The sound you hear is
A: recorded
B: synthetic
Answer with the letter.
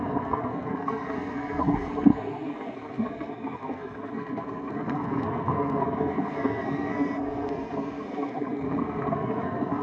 B